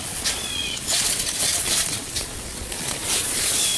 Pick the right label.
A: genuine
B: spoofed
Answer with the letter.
B